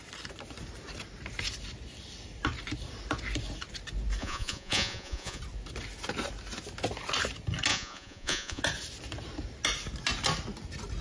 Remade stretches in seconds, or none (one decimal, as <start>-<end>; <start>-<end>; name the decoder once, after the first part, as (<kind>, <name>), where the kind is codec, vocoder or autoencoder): 4.2-5.4 (vocoder, Vocos); 7.7-8.6